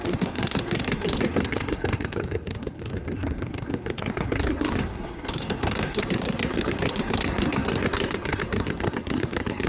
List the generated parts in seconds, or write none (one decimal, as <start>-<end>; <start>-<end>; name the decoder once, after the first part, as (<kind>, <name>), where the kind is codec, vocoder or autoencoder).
0.0-9.7 (codec, SNAC)